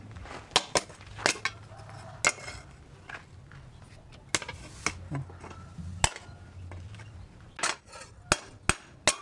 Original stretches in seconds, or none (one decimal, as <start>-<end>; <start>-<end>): 0.0-9.2